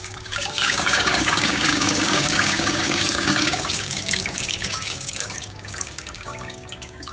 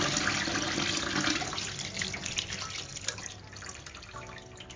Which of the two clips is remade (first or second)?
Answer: first